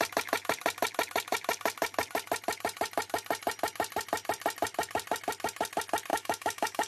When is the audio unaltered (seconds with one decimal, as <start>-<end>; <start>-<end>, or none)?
0.0-6.1